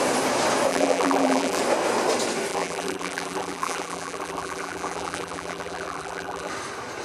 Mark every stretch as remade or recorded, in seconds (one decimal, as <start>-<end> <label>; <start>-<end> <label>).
0.0-0.7 recorded; 0.7-1.6 remade; 1.6-2.5 recorded; 2.5-6.5 remade; 6.5-7.0 recorded